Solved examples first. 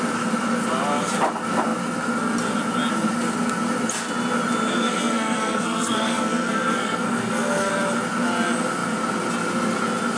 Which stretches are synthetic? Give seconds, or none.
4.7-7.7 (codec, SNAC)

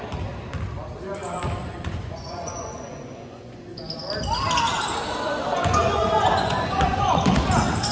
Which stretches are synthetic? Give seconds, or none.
1.6-3.8 (vocoder, Vocos); 5.5-7.4

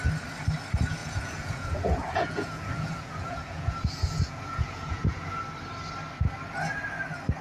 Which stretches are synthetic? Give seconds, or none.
1.0-5.4 (vocoder, Vocos)

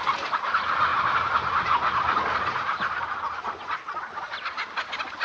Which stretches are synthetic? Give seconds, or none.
none

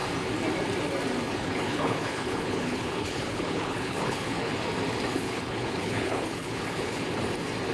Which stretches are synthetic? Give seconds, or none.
1.3-4.5 (codec, HILCodec); 5.1-7.0